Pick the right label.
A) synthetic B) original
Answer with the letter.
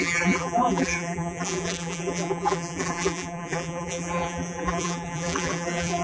A